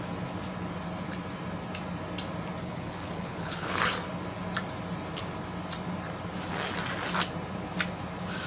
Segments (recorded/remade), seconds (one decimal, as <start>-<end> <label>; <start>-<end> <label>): 0.0-2.6 recorded; 2.6-3.8 remade; 3.8-8.5 recorded